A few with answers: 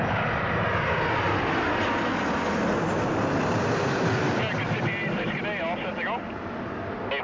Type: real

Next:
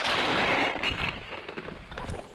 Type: fake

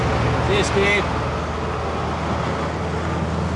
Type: real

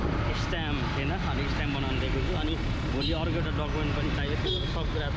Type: real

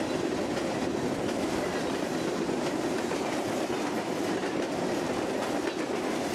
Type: real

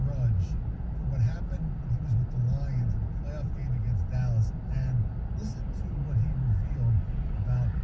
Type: real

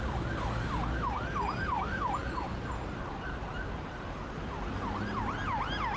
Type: real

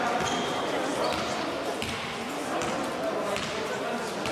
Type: real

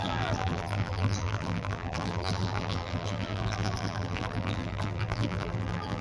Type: fake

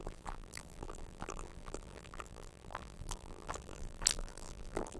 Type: fake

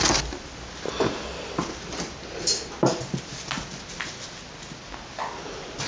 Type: real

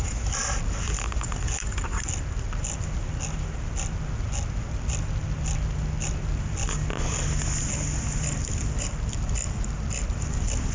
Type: real